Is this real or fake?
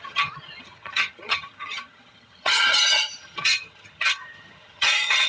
fake